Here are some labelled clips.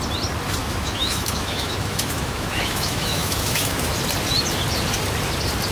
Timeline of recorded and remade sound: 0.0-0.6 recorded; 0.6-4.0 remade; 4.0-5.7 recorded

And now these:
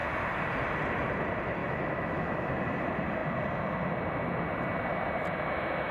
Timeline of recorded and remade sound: 0.0-1.6 recorded; 1.6-2.5 remade; 2.5-5.9 recorded

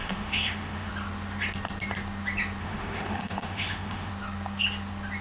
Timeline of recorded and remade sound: 0.0-0.9 remade; 0.9-2.6 recorded; 2.6-4.1 remade; 4.1-5.2 recorded

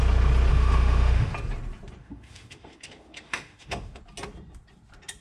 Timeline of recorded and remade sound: 0.0-0.5 recorded; 0.5-1.3 remade; 1.3-2.0 recorded; 2.0-4.0 remade; 4.0-5.2 recorded

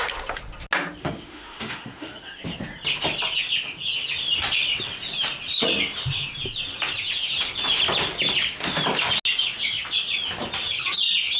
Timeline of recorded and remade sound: 0.0-1.0 recorded; 1.0-2.2 remade; 2.2-11.4 recorded

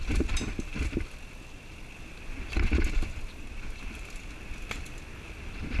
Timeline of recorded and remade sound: 0.0-5.8 recorded

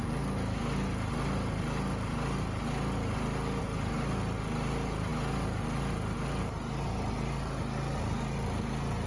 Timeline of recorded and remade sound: 0.0-9.1 recorded